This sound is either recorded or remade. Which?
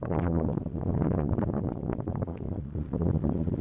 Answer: remade